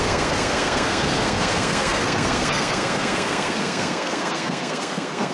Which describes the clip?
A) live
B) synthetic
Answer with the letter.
B